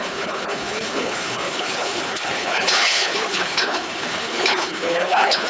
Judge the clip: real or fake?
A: fake